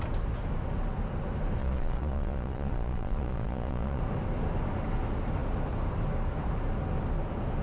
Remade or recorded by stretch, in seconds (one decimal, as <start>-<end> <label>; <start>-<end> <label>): 0.0-1.6 recorded; 1.6-4.0 remade; 4.0-7.6 recorded